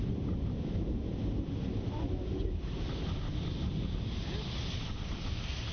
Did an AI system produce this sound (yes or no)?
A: no